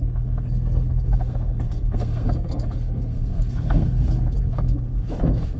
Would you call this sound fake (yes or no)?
yes